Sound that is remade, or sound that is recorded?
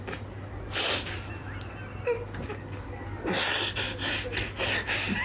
recorded